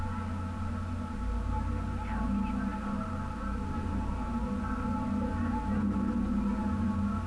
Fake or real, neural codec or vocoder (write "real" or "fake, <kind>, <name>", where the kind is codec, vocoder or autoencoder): real